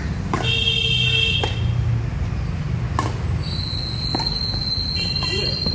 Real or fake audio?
real